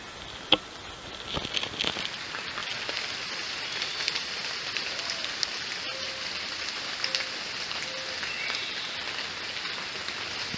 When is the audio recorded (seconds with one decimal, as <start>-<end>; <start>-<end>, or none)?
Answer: 0.0-8.6; 9.2-10.6

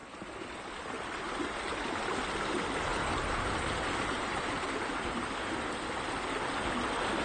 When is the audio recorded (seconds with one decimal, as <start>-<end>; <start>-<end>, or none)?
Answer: 0.0-2.9; 5.2-7.2

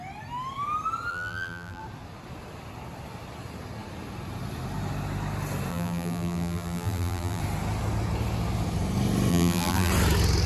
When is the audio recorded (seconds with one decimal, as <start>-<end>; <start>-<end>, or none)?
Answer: 0.0-1.1; 1.8-5.7; 7.4-9.3; 9.9-10.5

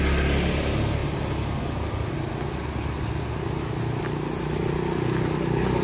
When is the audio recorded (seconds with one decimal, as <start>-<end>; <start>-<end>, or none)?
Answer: 0.0-5.8

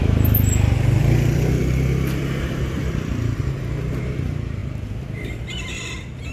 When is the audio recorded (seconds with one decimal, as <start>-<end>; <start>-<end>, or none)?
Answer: 0.0-1.0; 4.0-6.3